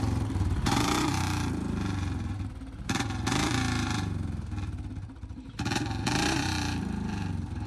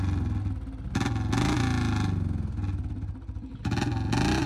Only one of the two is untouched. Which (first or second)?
second